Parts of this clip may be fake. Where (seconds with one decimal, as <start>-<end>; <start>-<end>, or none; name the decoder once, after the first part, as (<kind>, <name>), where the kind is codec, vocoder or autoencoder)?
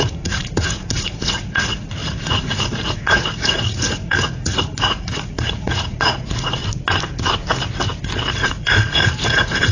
0.0-6.6 (vocoder, Vocos); 8.3-9.7